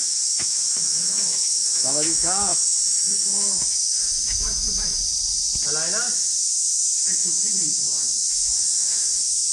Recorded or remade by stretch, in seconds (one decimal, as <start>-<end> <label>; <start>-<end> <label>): 0.0-5.0 remade; 5.0-6.2 recorded; 6.2-9.5 remade